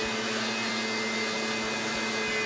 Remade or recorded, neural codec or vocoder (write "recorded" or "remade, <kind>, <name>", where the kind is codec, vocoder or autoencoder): recorded